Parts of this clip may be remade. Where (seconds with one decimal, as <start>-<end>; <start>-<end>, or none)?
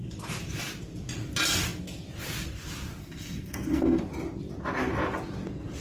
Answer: 3.0-4.0